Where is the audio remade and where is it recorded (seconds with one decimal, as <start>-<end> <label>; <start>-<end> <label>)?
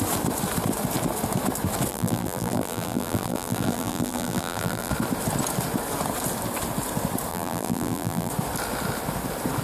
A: 0.0-1.9 recorded; 1.9-4.9 remade; 4.9-7.3 recorded; 7.3-8.3 remade; 8.3-9.6 recorded